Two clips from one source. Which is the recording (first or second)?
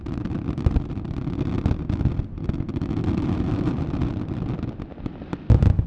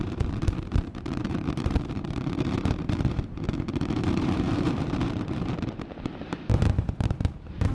first